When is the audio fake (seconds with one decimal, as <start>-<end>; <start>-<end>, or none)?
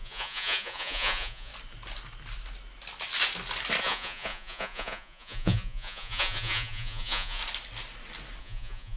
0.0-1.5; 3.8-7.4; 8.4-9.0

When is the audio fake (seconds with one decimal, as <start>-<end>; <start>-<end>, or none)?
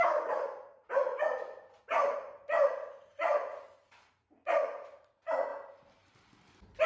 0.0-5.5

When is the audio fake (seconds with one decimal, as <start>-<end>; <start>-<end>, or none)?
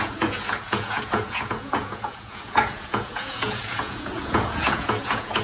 0.0-5.4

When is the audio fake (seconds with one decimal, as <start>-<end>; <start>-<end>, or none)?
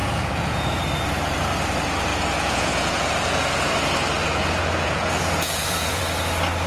0.0-0.7; 2.1-3.7; 4.2-6.0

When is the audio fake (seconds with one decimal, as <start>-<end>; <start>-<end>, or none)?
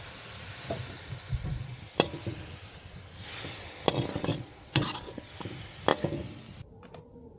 4.3-5.3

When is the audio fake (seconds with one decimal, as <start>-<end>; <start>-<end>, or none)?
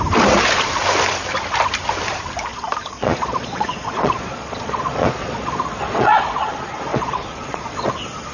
2.5-6.5; 6.9-7.9